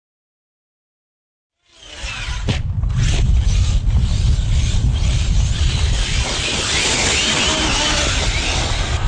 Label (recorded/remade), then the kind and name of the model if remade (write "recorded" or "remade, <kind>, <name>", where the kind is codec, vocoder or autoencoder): recorded